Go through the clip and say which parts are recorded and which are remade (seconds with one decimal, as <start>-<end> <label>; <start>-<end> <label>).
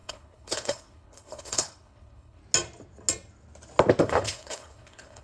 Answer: 0.0-2.4 remade; 2.4-4.0 recorded; 4.0-5.2 remade